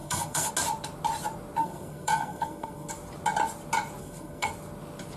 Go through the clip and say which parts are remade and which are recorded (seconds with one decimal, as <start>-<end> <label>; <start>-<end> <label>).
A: 0.0-0.5 remade; 0.5-1.6 recorded; 1.6-2.9 remade; 2.9-4.0 recorded; 4.0-4.5 remade; 4.5-5.2 recorded